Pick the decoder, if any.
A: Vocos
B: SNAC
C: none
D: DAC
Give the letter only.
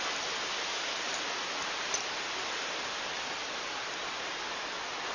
C